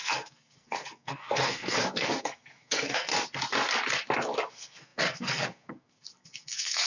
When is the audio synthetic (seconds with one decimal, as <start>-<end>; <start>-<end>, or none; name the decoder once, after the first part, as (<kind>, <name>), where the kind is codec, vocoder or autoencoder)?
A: 0.0-3.1 (codec, SNAC); 4.5-6.9